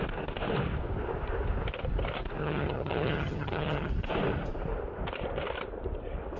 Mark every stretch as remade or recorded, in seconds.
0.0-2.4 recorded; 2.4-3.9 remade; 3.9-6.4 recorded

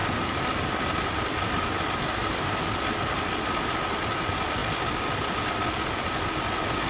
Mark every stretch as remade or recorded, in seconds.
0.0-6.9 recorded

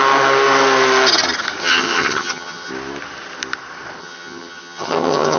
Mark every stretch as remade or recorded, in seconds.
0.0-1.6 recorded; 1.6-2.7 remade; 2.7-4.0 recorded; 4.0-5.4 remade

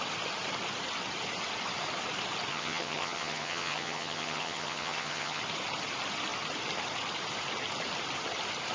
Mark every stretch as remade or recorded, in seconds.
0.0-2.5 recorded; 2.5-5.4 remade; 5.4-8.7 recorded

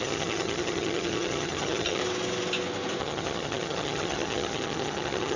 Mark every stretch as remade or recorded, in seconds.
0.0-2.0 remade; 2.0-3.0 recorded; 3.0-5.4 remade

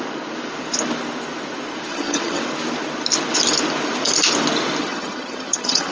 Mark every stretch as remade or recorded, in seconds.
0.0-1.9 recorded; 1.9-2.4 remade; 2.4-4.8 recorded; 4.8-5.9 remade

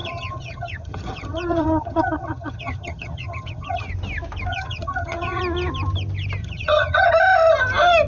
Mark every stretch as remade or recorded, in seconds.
0.0-3.9 remade; 3.9-4.5 recorded; 4.5-5.4 remade; 5.4-6.4 recorded; 6.4-7.1 remade; 7.1-8.1 recorded